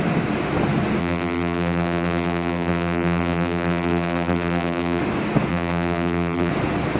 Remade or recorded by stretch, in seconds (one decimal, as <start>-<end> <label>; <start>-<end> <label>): 0.0-1.0 recorded; 1.0-5.0 remade; 5.0-5.5 recorded; 5.5-6.5 remade; 6.5-7.0 recorded